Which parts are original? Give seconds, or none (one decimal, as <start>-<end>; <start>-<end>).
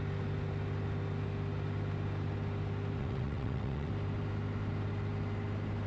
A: 0.0-3.0; 3.9-5.9